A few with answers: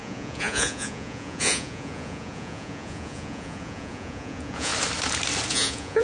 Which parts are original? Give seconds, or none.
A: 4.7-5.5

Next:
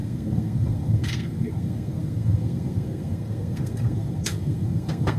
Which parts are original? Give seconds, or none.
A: none

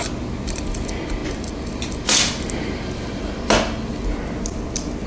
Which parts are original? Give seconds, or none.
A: 0.0-5.1

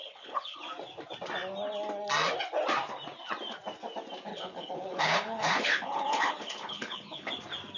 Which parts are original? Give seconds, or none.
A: 0.6-4.3; 7.3-7.8

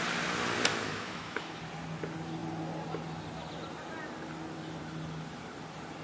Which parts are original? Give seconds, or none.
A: 0.0-0.7; 1.6-6.0

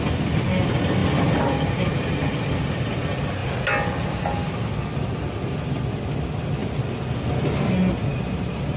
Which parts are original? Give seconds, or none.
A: 0.0-8.1

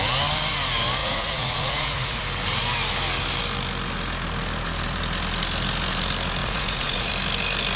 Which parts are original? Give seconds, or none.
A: 0.0-1.0; 2.2-6.4; 7.1-7.8

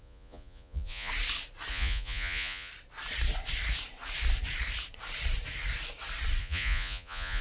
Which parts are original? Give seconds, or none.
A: 1.1-1.7; 2.7-6.4